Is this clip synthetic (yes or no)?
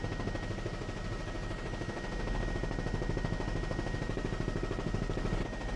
no